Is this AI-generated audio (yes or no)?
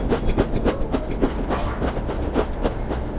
no